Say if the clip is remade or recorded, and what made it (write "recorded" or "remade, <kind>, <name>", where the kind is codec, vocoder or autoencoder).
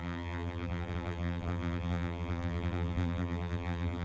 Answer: remade, vocoder, BigVGAN v2